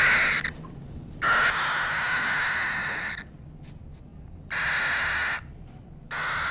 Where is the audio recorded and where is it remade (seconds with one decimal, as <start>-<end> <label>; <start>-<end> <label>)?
0.0-2.8 recorded; 2.8-3.6 remade; 3.6-4.1 recorded; 4.1-4.8 remade; 4.8-6.5 recorded